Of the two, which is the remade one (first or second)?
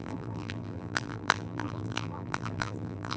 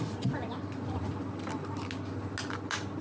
first